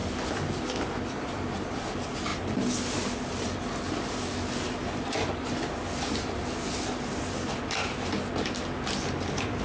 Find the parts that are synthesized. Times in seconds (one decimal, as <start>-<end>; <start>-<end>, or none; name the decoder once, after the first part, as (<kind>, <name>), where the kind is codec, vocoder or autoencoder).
0.0-1.9 (vocoder, BigVGAN v2)